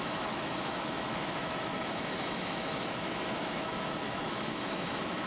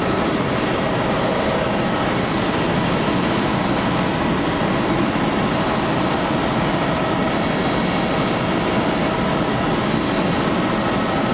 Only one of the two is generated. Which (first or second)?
first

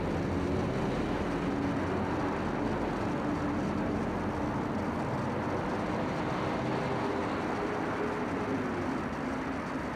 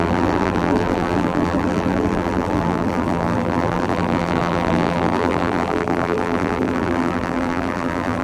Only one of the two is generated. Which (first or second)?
second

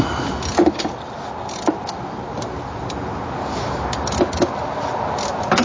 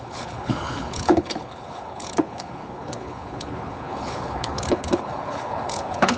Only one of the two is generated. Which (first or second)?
second